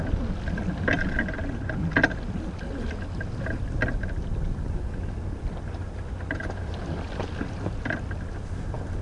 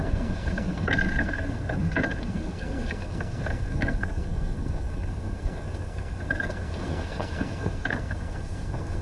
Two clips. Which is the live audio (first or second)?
first